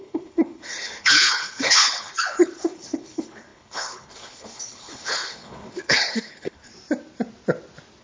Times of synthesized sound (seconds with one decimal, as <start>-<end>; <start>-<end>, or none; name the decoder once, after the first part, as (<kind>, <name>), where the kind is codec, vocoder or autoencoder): 0.0-6.7 (codec, HILCodec)